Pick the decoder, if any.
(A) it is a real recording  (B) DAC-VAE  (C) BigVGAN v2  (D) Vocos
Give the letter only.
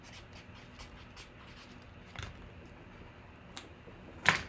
A